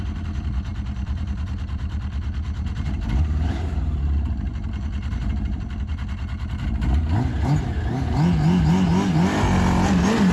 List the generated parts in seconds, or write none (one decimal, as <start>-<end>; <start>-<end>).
0.7-5.9